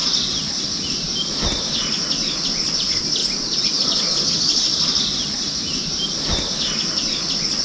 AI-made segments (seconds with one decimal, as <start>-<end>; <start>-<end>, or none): none